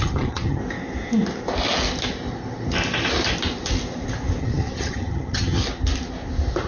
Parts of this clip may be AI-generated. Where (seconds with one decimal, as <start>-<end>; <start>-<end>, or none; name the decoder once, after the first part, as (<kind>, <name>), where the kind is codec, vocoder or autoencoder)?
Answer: 0.0-0.6 (vocoder, HiFi-GAN); 4.4-5.6